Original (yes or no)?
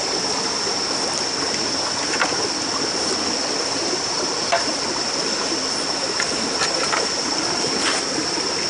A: yes